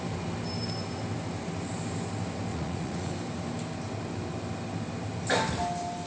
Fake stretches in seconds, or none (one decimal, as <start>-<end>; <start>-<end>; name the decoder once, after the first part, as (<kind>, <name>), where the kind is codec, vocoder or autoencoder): 2.5-3.1 (vocoder, Vocos)